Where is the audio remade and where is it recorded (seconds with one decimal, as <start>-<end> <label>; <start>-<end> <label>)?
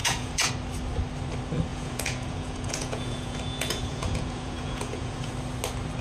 0.0-0.5 remade; 0.5-1.7 recorded; 1.7-5.3 remade; 5.3-6.0 recorded